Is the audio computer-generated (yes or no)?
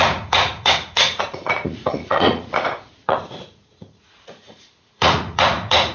yes